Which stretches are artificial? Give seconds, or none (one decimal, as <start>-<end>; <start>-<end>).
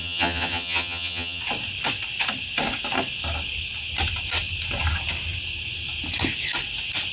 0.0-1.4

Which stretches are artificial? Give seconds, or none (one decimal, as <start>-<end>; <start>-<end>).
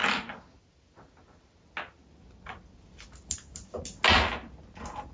none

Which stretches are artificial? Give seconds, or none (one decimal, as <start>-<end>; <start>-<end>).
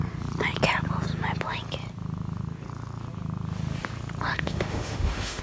4.3-5.4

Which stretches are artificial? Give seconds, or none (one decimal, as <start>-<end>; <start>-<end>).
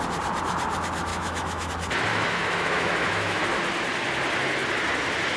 1.1-1.7; 2.1-3.4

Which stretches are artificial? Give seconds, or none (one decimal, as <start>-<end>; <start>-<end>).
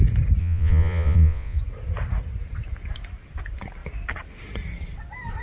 0.4-1.6